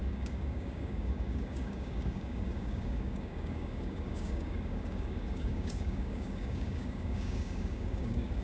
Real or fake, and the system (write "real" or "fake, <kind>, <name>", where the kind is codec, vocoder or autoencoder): fake, codec, DAC